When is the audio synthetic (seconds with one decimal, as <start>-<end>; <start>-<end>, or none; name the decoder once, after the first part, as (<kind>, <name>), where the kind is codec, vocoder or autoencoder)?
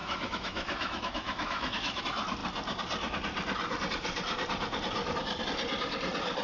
0.0-2.0 (autoencoder, DAC-VAE)